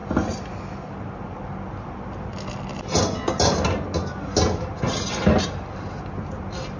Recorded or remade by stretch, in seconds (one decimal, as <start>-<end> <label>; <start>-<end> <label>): 0.0-6.8 recorded